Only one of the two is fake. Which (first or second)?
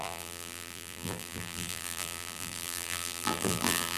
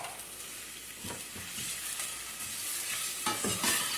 first